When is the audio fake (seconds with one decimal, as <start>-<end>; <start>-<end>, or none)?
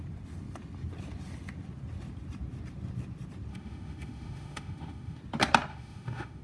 3.5-5.2; 5.7-6.4